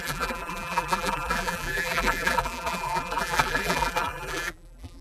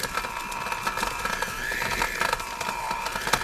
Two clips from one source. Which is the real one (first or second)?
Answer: second